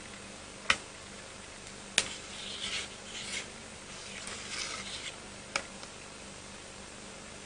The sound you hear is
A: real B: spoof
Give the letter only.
A